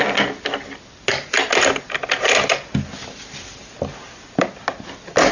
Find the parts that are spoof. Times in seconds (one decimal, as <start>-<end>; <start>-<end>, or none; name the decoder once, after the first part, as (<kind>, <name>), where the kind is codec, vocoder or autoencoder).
none